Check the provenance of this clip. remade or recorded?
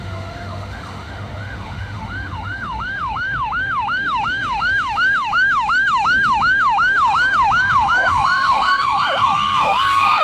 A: remade